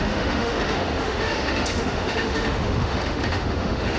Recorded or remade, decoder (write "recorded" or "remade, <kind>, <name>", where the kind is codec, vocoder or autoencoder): remade, autoencoder, DAC-VAE